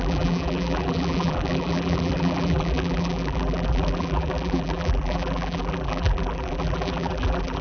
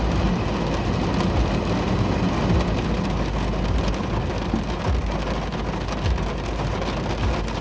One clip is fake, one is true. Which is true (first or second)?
second